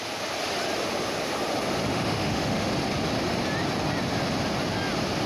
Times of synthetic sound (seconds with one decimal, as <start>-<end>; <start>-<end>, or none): 1.9-2.7